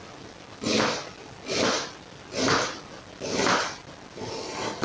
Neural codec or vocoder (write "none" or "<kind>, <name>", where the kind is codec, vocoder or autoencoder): none